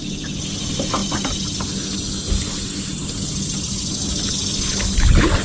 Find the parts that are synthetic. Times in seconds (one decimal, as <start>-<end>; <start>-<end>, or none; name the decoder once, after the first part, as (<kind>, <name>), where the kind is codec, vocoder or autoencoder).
none